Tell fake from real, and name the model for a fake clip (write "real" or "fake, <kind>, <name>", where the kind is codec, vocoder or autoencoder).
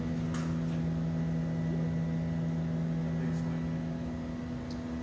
real